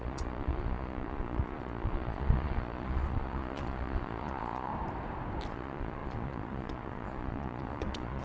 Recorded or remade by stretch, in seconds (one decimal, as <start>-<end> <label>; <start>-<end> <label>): 0.0-4.7 remade; 4.7-5.5 recorded; 5.5-8.2 remade